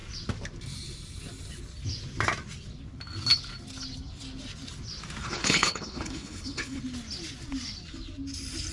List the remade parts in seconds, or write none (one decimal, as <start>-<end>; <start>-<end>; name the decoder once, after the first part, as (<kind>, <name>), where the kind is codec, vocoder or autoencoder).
5.2-6.8 (codec, HILCodec)